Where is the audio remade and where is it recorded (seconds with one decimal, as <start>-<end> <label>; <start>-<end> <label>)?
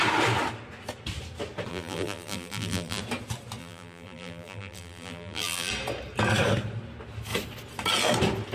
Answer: 0.0-1.7 recorded; 1.7-3.0 remade; 3.0-3.6 recorded; 3.6-5.7 remade; 5.7-8.5 recorded